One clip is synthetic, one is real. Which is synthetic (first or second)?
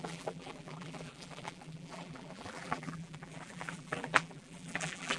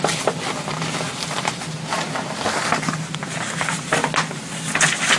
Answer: first